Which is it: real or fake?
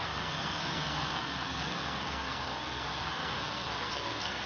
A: fake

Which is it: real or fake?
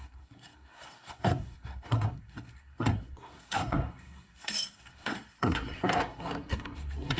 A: fake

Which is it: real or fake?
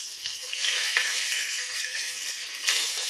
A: fake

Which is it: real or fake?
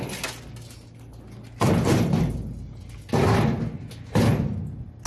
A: real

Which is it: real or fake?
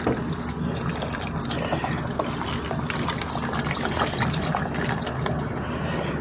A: real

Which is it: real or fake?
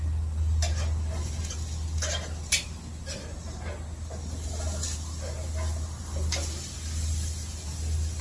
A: real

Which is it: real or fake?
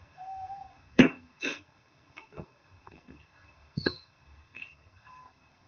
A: fake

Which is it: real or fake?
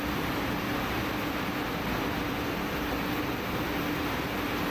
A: real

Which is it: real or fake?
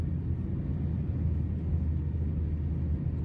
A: real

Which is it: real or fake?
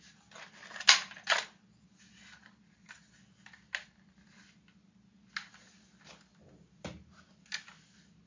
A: real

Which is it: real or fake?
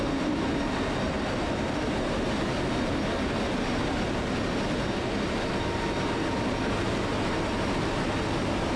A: real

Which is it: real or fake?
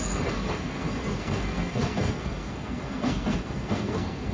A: fake